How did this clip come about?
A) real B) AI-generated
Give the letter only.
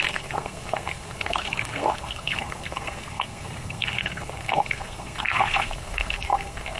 B